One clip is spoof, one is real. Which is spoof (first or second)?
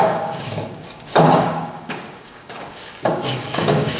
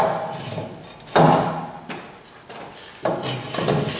first